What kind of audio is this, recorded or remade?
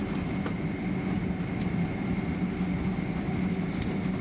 recorded